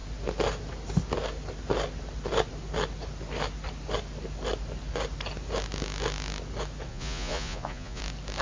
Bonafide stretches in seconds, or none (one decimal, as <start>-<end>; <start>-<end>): 0.0-6.9; 8.0-8.4